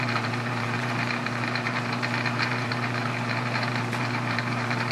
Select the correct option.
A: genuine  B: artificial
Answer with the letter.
B